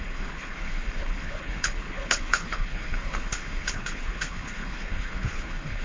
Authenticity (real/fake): fake